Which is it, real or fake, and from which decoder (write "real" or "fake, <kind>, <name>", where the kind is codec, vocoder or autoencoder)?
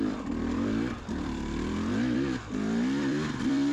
fake, vocoder, BigVGAN v2